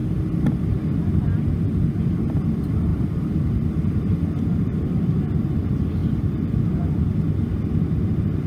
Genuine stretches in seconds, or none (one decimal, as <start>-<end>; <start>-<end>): 0.0-2.9; 5.2-6.0; 7.1-8.5